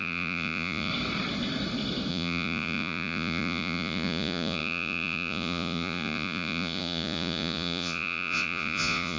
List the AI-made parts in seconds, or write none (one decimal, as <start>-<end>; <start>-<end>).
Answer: 0.0-0.9; 2.1-9.2